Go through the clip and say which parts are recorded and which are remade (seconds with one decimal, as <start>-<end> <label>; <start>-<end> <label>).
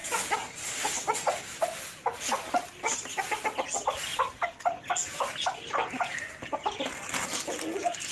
0.0-8.1 recorded